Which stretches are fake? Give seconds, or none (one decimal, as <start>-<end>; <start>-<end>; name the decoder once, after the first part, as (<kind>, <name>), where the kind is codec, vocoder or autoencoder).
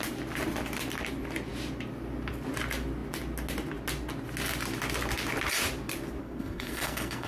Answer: 6.2-7.3 (codec, SNAC)